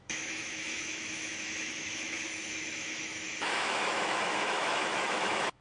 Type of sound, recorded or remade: remade